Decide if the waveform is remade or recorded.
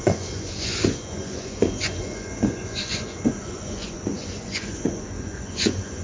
remade